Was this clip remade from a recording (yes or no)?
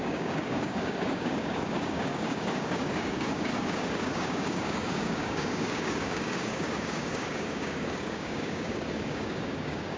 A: yes